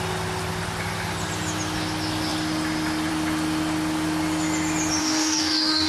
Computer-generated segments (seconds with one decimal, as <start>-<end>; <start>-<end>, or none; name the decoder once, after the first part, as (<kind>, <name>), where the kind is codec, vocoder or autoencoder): 5.0-5.9 (codec, DAC)